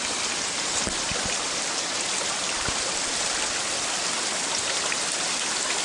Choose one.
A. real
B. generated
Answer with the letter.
A